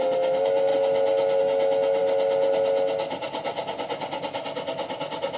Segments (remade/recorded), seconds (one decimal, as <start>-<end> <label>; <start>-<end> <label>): 0.0-0.7 remade; 0.7-1.4 recorded; 1.4-2.0 remade; 2.0-5.4 recorded